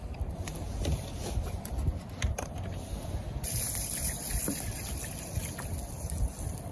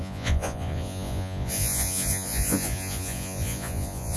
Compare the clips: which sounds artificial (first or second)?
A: second